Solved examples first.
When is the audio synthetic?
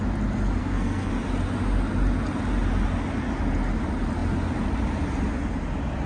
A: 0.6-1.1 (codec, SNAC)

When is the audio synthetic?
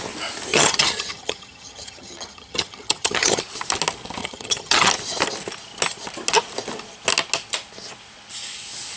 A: 0.5-3.4 (vocoder, HiFi-GAN); 4.2-4.9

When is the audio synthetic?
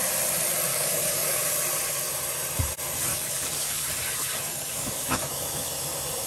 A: 0.7-1.4 (codec, DAC); 3.1-3.9; 4.5-5.7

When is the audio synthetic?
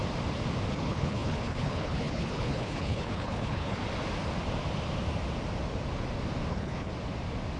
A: 0.7-3.8 (codec, HILCodec); 6.5-6.9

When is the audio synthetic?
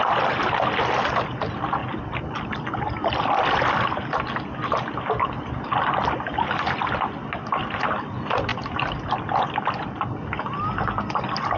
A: 5.2-6.5 (vocoder, BigVGAN v2)